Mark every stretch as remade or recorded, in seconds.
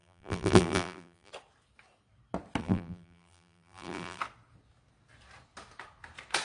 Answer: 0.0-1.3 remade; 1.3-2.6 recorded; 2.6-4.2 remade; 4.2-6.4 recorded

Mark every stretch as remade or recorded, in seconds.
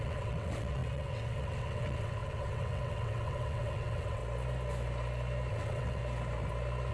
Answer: 0.0-4.2 remade; 4.2-5.5 recorded; 5.5-6.0 remade; 6.0-6.9 recorded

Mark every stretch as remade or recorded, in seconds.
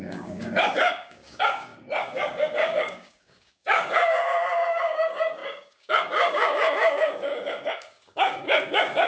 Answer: 0.0-9.1 remade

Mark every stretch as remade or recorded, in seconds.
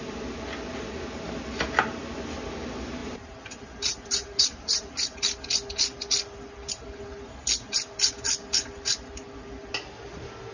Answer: 0.0-3.0 recorded; 3.0-5.2 remade; 5.2-10.5 recorded